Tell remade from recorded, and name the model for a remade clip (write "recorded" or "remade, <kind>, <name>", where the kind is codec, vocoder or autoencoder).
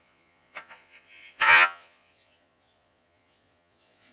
remade, vocoder, Vocos